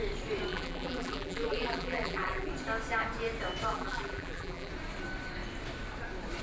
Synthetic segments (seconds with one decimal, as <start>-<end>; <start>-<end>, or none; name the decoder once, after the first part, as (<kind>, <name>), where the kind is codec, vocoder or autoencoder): 0.5-2.5 (vocoder, BigVGAN v2); 3.7-4.7